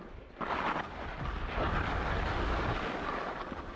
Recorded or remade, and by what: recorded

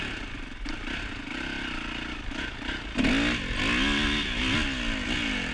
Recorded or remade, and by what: recorded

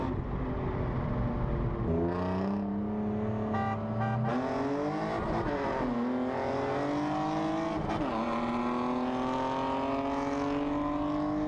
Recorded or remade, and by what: recorded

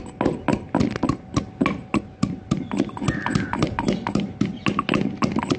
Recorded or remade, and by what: recorded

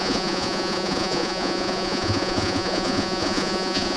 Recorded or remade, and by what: remade, vocoder, Vocos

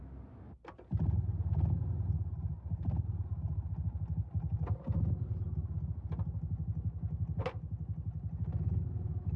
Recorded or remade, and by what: recorded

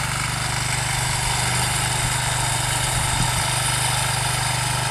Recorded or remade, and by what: recorded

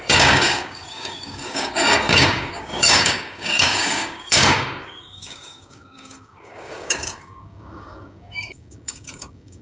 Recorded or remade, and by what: remade, codec, DAC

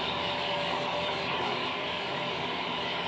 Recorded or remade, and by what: remade, codec, DAC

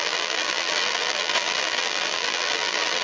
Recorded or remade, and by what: remade, vocoder, BigVGAN v2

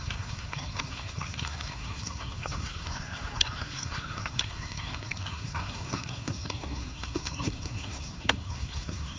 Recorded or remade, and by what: remade, codec, SNAC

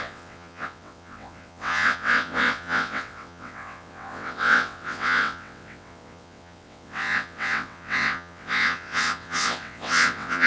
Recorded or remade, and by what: remade, vocoder, WaveNeXt